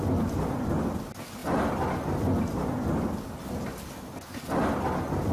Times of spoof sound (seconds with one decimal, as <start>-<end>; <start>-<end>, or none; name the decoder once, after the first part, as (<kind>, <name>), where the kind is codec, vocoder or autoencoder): none